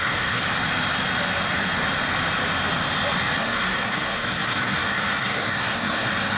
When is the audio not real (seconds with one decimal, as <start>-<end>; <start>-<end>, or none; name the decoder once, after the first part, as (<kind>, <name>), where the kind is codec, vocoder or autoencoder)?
0.0-0.4 (codec, SNAC); 3.4-6.4